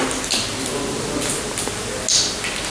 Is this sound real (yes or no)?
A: yes